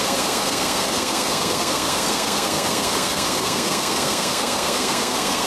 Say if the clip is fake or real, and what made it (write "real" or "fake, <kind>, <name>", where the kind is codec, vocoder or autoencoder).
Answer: fake, codec, SNAC